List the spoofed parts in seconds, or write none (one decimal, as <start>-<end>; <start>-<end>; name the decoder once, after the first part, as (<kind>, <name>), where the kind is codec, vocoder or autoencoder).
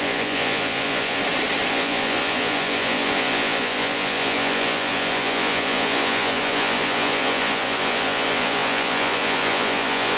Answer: 0.0-1.2 (vocoder, Vocos); 1.7-10.2